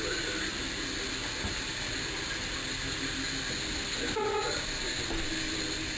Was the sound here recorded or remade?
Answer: recorded